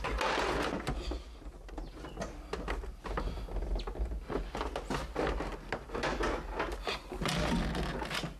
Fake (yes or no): no